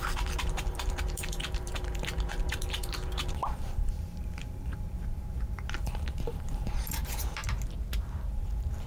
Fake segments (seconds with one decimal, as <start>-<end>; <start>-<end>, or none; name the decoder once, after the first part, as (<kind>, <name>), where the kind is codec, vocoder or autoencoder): 0.0-7.4 (vocoder, BigVGAN v2); 8.3-8.9